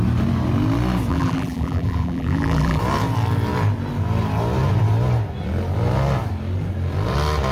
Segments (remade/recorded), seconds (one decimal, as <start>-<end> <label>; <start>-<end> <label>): 0.0-1.1 recorded; 1.1-2.8 remade; 2.8-7.5 recorded